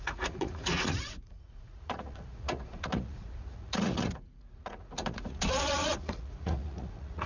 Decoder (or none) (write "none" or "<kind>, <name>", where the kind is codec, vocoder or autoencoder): vocoder, Vocos